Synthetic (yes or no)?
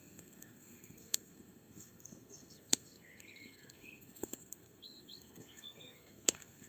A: yes